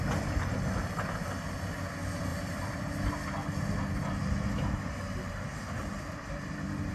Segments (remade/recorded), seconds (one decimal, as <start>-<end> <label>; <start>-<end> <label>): 0.0-2.3 recorded; 2.3-2.9 remade; 2.9-5.5 recorded; 5.5-6.9 remade

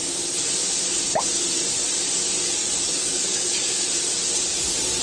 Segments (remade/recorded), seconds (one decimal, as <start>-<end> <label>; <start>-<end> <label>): 0.0-2.6 recorded; 2.6-3.9 remade; 3.9-5.0 recorded

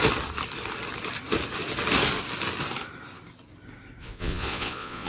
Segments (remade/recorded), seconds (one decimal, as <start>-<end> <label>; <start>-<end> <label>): 0.0-4.0 recorded; 4.0-5.1 remade

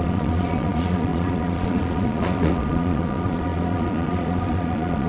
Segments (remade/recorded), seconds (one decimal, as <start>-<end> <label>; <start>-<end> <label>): 0.0-5.1 remade

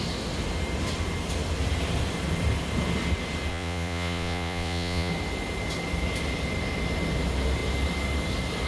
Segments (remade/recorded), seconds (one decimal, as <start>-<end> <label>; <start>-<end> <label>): 0.0-3.5 recorded; 3.5-5.1 remade; 5.1-8.7 recorded

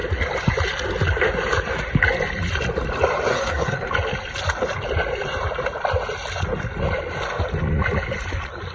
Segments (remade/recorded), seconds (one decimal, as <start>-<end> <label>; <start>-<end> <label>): 0.0-3.3 recorded; 3.3-3.9 remade; 3.9-8.7 recorded

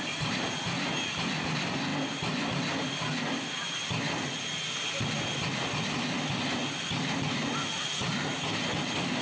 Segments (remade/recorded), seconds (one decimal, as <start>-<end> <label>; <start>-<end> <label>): 0.0-9.2 recorded

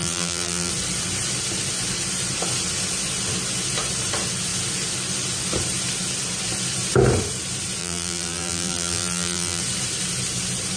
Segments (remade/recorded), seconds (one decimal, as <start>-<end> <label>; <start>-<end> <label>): 0.0-0.7 remade; 0.7-7.8 recorded; 7.8-9.6 remade; 9.6-10.8 recorded